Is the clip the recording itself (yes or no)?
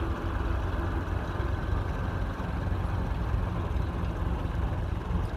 yes